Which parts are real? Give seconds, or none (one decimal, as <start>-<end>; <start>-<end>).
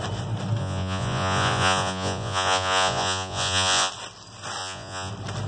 0.0-0.6; 3.9-4.6; 5.1-5.5